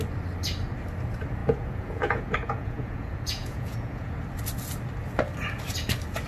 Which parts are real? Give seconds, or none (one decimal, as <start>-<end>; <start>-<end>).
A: 0.0-1.4; 4.2-6.3